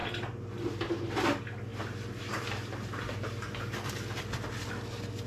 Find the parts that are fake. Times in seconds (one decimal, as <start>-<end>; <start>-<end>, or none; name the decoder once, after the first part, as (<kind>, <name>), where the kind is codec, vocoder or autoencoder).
none